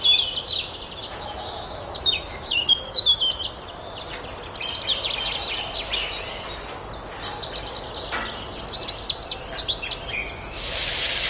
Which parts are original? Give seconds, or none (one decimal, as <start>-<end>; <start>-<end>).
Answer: 0.0-1.0; 3.2-11.3